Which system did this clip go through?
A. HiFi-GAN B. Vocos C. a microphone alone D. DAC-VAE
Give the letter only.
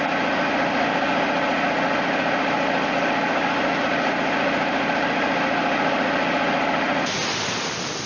C